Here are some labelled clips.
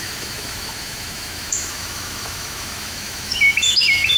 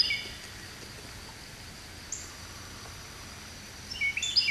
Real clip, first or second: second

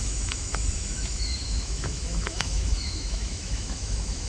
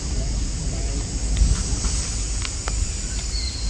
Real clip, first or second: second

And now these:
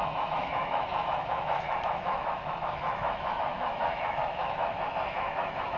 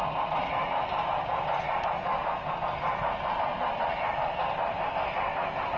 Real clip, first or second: second